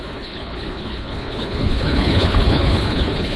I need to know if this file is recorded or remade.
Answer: remade